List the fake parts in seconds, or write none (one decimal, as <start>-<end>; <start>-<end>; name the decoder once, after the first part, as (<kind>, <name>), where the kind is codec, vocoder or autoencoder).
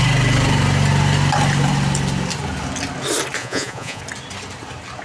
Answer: 3.4-4.0 (vocoder, Vocos)